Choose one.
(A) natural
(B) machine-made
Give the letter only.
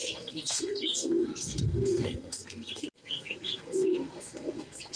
B